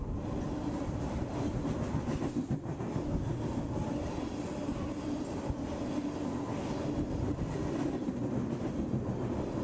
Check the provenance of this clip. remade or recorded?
recorded